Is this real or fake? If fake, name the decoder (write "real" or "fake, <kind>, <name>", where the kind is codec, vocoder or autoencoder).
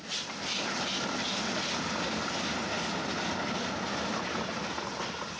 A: real